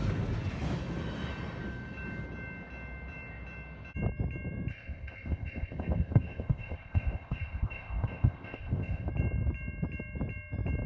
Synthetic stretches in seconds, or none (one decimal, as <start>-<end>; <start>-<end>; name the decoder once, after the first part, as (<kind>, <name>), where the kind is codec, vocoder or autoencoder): 4.7-9.1 (codec, ZipCodec)